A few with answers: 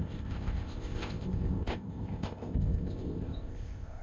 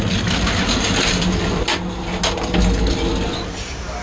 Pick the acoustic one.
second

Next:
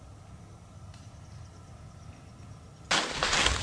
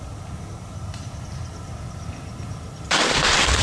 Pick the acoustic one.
first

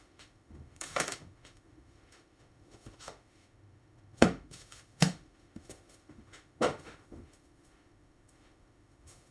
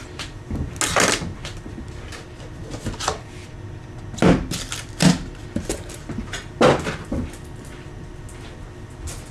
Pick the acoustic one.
second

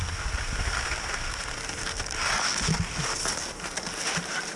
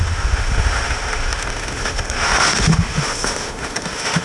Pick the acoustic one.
first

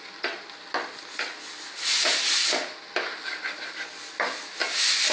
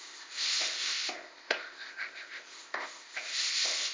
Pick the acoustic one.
first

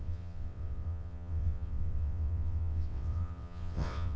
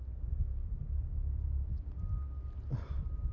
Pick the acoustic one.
second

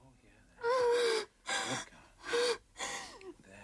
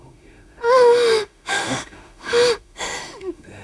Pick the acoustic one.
first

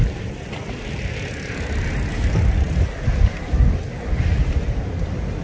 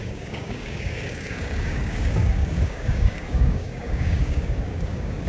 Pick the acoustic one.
first